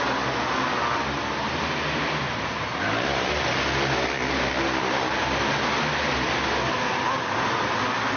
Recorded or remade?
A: recorded